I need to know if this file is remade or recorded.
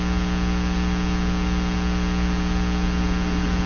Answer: recorded